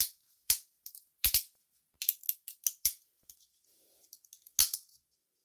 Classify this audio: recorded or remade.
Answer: remade